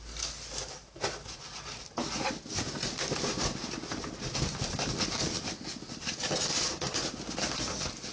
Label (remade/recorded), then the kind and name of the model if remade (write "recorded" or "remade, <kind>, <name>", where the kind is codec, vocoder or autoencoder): recorded